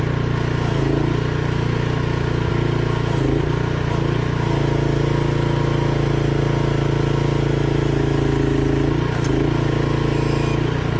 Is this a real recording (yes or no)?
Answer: yes